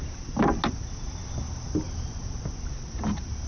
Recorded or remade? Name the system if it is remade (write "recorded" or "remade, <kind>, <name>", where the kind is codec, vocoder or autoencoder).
recorded